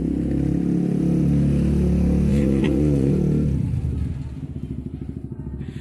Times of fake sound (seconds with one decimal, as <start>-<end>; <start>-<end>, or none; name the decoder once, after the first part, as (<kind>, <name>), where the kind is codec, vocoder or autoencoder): 2.3-3.1 (vocoder, Vocos)